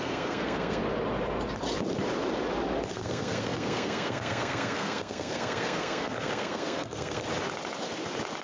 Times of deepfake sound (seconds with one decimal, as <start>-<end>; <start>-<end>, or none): 0.0-0.8; 2.9-7.3